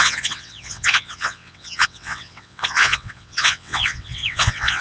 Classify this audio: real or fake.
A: fake